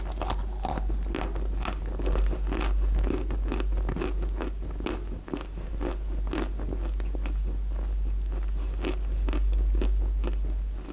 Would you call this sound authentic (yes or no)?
yes